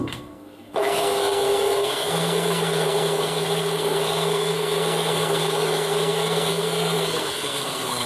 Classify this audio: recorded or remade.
remade